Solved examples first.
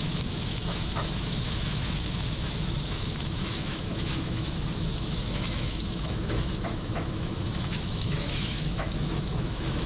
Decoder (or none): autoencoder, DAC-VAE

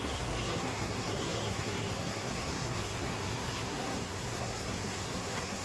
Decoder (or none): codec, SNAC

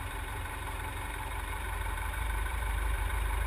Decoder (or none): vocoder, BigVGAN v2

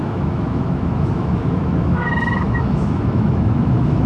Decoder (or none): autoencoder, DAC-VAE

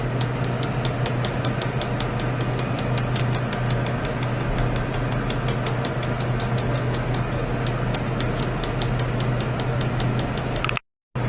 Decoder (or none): none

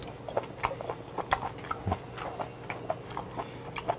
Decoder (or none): none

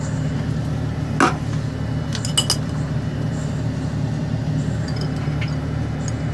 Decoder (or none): none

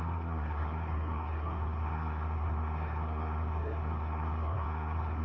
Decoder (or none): codec, SNAC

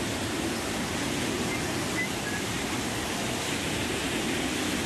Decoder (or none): none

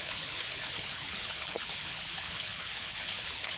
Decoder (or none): codec, HILCodec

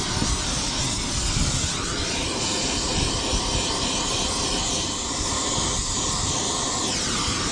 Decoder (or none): none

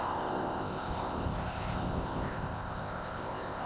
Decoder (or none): codec, ZipCodec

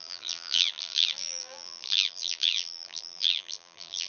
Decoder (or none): vocoder, BigVGAN v2